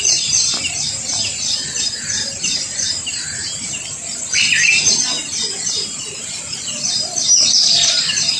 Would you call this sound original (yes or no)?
yes